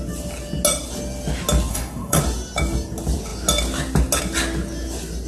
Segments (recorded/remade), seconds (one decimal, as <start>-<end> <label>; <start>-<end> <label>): 0.0-1.7 recorded; 1.7-2.2 remade; 2.2-5.3 recorded